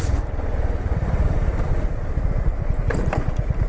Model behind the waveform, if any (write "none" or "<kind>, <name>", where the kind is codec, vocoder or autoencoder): vocoder, BigVGAN v2